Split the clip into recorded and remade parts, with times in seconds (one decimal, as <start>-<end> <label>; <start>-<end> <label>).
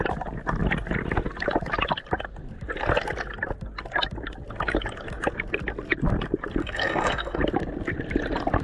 0.0-6.6 recorded; 6.6-7.4 remade; 7.4-8.6 recorded